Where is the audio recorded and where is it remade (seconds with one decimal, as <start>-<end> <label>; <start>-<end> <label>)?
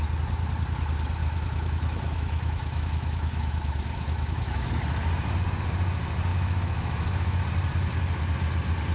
0.0-1.2 recorded; 1.2-4.7 remade; 4.7-6.3 recorded; 6.3-7.4 remade; 7.4-8.9 recorded